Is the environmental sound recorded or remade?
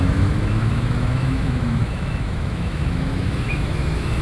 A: remade